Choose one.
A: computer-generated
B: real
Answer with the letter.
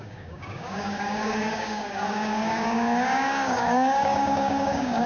A